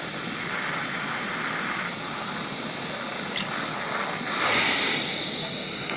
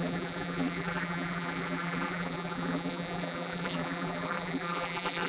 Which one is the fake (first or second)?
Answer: second